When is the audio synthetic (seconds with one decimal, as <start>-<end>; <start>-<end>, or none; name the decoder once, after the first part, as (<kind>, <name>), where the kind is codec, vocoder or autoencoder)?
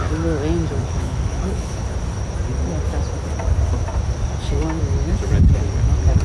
0.8-1.9 (codec, HILCodec)